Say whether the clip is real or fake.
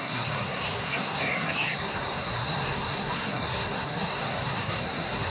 fake